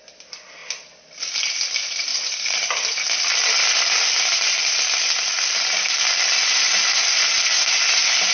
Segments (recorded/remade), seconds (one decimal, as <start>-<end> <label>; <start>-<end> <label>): 0.0-8.3 recorded